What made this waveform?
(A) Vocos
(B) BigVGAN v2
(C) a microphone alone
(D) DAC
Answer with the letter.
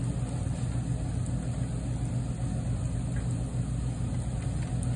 C